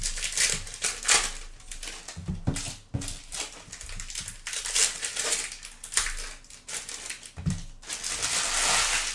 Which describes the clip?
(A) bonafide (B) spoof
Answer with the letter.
A